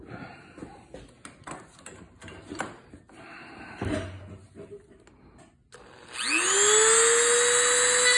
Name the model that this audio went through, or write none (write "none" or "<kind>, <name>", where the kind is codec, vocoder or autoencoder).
none